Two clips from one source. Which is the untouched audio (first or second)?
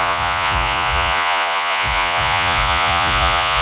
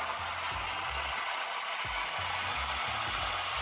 second